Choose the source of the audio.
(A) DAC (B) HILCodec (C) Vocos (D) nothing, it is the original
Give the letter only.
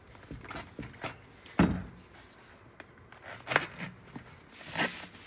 D